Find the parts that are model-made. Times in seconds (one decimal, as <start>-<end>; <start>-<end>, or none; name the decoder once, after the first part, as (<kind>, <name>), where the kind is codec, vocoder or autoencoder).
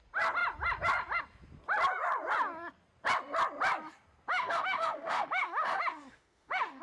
4.3-6.8 (autoencoder, DAC-VAE)